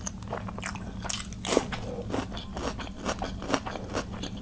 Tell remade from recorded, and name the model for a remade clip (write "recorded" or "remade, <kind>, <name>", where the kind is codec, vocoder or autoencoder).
recorded